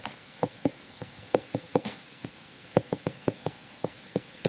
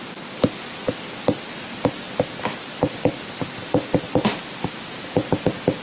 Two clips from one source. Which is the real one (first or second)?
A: second